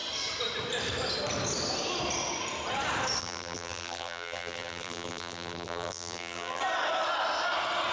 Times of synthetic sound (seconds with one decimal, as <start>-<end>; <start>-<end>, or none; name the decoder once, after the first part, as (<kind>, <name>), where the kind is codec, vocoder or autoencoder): 3.2-6.6 (vocoder, BigVGAN v2)